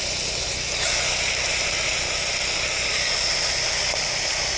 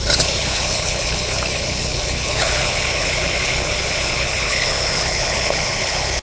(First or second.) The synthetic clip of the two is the second